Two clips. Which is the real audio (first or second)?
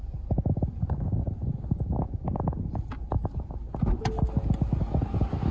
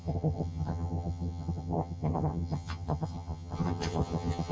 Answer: first